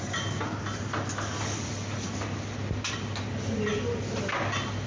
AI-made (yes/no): no